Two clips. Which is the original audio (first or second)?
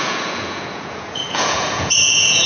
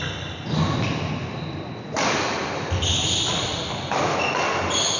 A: second